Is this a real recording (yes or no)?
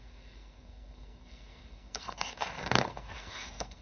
no